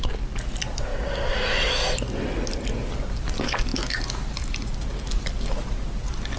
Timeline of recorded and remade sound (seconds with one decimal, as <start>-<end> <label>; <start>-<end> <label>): 0.0-6.4 recorded